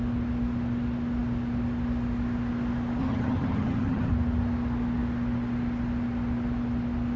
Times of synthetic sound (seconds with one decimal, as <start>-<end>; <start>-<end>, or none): 3.0-4.1